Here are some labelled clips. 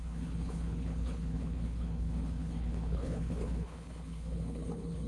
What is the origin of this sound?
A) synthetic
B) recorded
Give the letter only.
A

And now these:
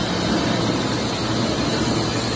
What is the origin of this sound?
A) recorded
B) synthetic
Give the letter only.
A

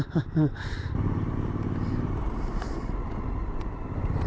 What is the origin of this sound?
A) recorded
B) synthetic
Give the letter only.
B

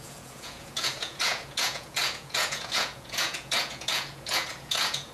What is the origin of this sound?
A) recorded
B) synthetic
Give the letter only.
B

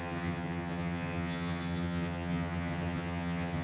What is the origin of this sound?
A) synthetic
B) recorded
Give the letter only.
A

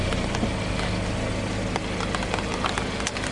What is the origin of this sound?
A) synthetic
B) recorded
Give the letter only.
B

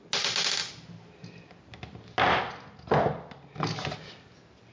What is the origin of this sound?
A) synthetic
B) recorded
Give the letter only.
B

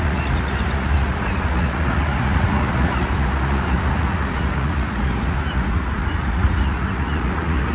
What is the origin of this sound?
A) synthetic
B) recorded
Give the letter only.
A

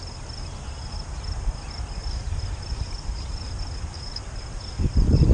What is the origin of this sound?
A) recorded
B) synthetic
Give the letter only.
A